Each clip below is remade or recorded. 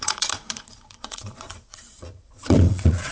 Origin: remade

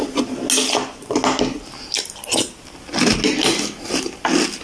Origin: recorded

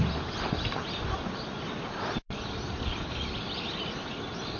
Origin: recorded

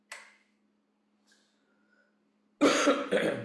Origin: recorded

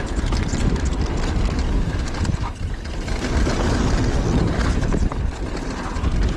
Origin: recorded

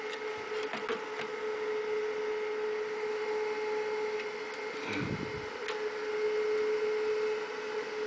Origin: recorded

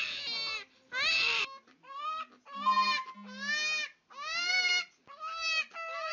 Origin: recorded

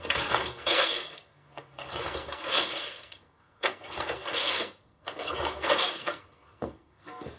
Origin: remade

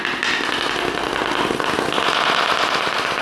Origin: recorded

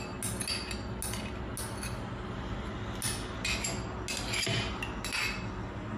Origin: recorded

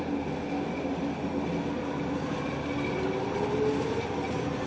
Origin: recorded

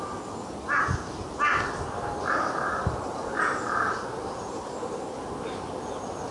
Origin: recorded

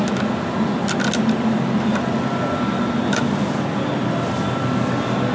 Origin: recorded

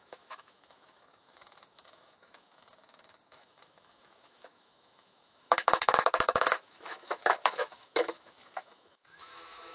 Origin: remade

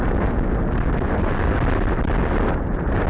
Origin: recorded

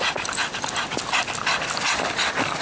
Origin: recorded